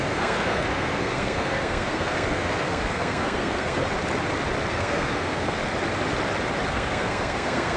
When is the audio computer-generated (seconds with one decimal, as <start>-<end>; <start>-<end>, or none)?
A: 0.0-3.8; 4.7-5.6; 6.7-7.8